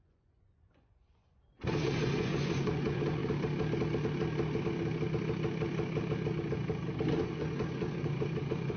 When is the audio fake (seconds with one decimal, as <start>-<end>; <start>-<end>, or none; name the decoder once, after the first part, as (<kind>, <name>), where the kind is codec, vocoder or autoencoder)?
0.0-3.2 (vocoder, Vocos); 7.1-8.8